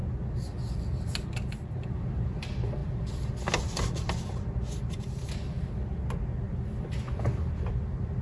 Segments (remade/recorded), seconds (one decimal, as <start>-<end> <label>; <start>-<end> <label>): 0.0-8.2 recorded

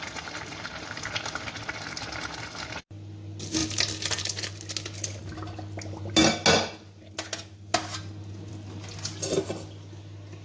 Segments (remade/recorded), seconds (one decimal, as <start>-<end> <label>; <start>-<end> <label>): 0.0-10.4 recorded

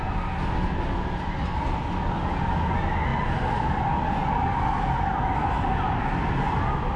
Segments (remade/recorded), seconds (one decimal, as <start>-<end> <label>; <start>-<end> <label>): 0.0-7.0 recorded

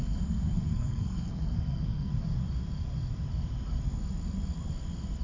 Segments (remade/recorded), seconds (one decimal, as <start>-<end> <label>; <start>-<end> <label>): 0.0-2.1 remade; 2.1-5.2 recorded

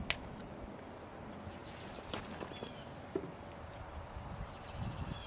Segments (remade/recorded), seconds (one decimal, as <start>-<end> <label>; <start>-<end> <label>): 0.0-5.3 recorded

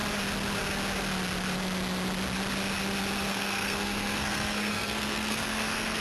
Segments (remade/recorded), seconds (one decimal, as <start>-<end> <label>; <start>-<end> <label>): 0.0-3.3 recorded; 3.3-6.0 remade

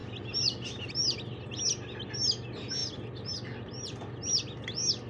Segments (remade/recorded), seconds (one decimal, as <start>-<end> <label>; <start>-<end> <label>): 0.0-5.1 recorded